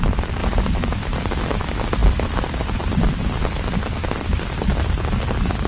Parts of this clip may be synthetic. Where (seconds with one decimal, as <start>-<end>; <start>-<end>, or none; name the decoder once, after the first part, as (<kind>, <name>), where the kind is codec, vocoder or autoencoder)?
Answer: none